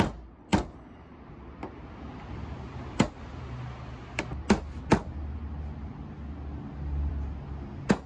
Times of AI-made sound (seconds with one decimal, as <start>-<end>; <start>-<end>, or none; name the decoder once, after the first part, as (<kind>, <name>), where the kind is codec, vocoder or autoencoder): none